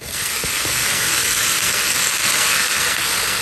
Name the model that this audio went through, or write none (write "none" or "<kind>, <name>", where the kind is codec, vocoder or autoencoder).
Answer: codec, SNAC